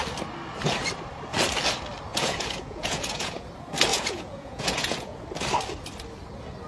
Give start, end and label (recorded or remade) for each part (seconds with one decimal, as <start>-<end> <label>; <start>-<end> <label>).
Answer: 0.0-2.1 recorded; 2.1-3.5 remade; 3.5-3.9 recorded; 3.9-5.2 remade; 5.2-6.7 recorded